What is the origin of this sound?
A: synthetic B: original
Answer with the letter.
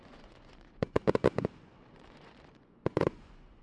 A